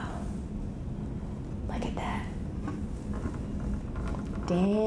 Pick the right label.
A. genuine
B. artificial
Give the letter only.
A